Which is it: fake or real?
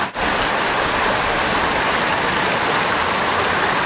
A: real